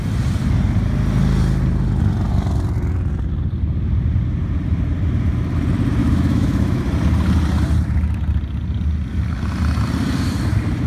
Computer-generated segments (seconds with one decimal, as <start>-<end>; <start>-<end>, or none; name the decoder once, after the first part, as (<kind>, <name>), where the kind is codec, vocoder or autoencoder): 6.0-6.8 (autoencoder, DAC-VAE)